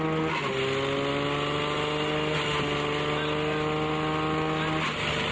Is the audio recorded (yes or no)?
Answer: yes